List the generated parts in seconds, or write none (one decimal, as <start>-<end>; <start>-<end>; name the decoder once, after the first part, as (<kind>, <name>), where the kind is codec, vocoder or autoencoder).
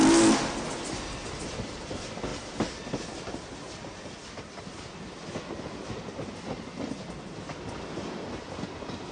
none